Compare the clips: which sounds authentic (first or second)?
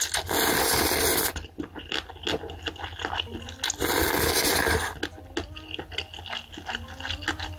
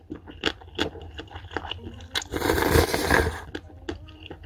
first